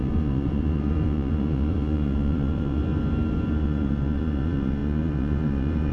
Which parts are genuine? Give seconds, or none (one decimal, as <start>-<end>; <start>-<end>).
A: 2.8-3.5